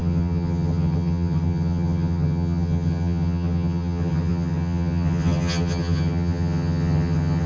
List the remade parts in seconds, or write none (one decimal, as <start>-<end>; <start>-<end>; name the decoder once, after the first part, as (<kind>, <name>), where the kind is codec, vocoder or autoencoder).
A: 0.0-7.5 (vocoder, HiFi-GAN)